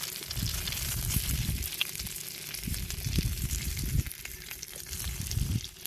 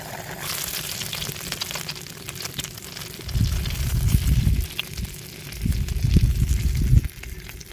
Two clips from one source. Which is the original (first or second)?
second